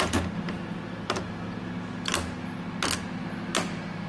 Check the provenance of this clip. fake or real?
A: real